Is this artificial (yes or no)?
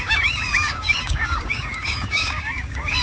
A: yes